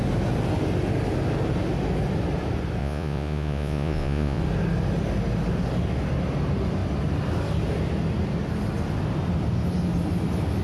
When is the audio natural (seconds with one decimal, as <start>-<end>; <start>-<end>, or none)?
0.0-2.8; 4.4-10.6

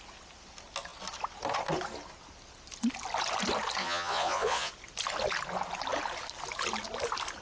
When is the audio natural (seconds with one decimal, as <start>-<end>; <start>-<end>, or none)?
0.0-3.8; 4.7-7.4

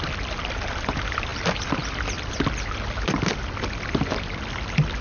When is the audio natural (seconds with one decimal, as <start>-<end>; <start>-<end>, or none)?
0.0-5.0

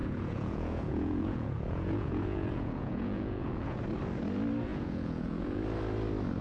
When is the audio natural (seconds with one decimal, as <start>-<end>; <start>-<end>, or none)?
3.8-4.7; 5.6-6.4

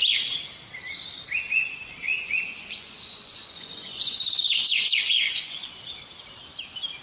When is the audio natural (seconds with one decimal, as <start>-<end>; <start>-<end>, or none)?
0.0-1.6; 5.8-7.0

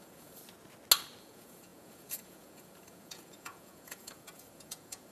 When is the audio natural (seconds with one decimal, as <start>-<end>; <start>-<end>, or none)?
0.4-1.2